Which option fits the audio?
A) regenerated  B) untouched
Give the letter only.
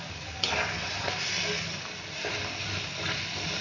B